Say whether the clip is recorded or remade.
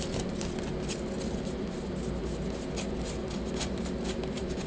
recorded